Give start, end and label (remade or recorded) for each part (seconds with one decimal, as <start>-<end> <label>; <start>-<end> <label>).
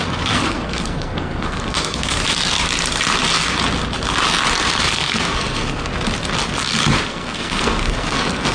0.0-2.2 remade; 2.2-4.9 recorded; 4.9-5.9 remade; 5.9-7.1 recorded; 7.1-8.5 remade